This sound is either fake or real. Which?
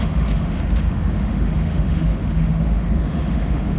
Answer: fake